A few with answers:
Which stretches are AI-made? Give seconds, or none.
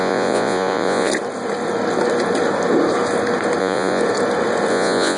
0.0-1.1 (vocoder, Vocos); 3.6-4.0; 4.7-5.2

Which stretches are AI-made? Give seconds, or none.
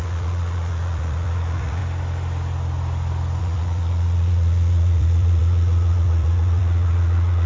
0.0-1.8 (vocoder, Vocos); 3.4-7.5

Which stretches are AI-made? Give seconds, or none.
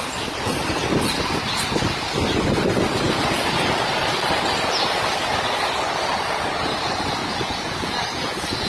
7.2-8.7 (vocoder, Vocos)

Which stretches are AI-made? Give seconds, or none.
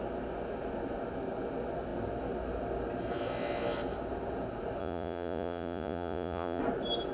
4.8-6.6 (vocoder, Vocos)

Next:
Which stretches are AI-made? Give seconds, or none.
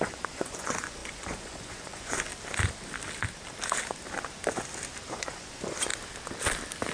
0.0-2.3 (vocoder, Vocos); 5.1-5.9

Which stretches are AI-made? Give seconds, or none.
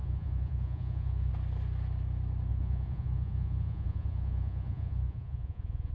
0.0-1.3 (vocoder, Vocos); 2.5-5.9